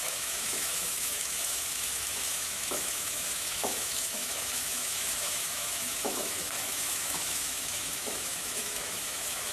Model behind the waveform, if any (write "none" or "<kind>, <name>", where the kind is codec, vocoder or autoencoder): autoencoder, DAC-VAE